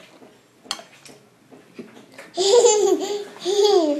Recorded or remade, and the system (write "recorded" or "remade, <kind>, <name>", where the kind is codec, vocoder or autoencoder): recorded